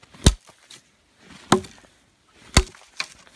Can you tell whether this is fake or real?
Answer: real